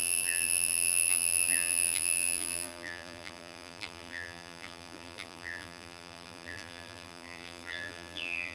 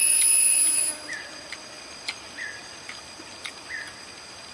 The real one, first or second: second